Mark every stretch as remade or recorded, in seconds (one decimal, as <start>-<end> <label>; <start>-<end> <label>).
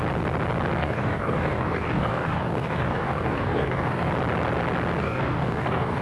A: 0.0-0.8 recorded; 0.8-4.1 remade; 4.1-5.0 recorded; 5.0-6.0 remade